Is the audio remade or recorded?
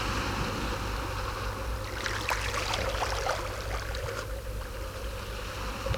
recorded